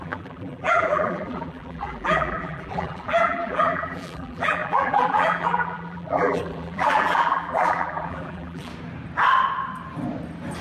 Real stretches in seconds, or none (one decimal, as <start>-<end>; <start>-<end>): 8.7-10.6